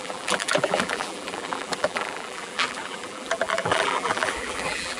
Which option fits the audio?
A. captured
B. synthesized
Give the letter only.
B